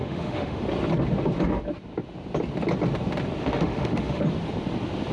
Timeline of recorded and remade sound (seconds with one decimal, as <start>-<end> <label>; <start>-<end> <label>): 0.0-0.6 remade; 0.6-3.4 recorded; 3.4-4.2 remade; 4.2-5.1 recorded